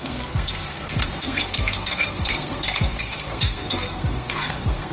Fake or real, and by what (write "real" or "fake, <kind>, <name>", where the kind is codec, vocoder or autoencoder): fake, codec, SNAC